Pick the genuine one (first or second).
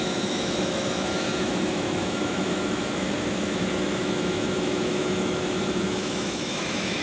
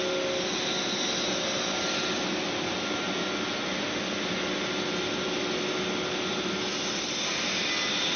second